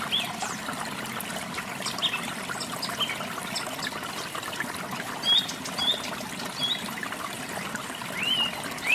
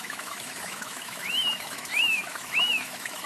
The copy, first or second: second